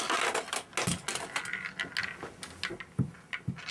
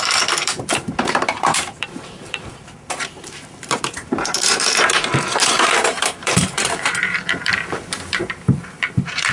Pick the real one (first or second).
first